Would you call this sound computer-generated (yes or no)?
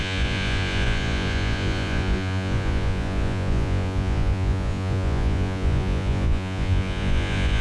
yes